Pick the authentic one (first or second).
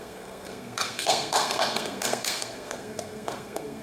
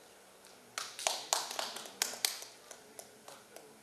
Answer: second